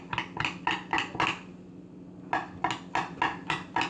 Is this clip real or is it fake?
real